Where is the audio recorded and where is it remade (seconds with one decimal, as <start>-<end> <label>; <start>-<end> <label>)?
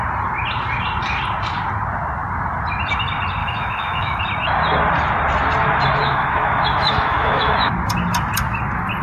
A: 0.0-3.4 recorded; 3.4-4.2 remade; 4.2-6.0 recorded; 6.0-7.7 remade; 7.7-9.0 recorded